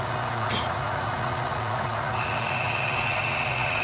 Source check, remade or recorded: remade